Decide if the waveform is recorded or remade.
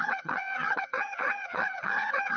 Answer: remade